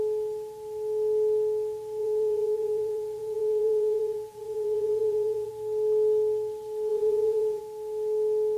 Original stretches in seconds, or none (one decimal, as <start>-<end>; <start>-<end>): 0.0-2.0; 5.5-6.9; 7.6-8.6